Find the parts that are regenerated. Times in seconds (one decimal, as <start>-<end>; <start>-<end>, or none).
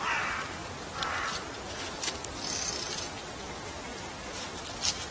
none